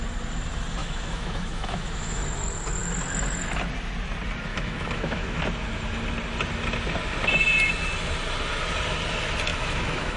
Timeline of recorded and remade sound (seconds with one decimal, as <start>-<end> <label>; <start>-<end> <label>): 0.0-0.8 recorded; 0.8-2.2 remade; 2.2-4.5 recorded; 4.5-5.4 remade; 5.4-9.5 recorded; 9.5-10.2 remade